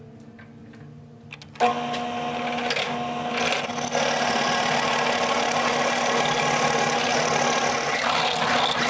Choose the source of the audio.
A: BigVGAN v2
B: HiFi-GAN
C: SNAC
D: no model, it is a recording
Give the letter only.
D